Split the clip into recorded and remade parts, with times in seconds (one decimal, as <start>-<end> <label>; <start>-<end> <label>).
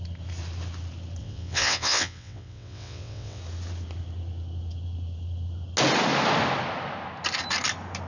0.0-1.2 recorded; 1.2-3.4 remade; 3.4-8.1 recorded